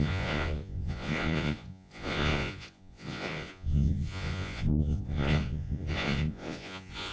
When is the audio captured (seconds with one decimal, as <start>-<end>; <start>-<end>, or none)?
none